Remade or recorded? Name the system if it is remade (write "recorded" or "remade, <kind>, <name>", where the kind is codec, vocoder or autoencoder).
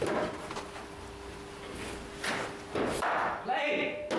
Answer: recorded